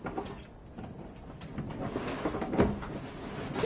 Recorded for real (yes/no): yes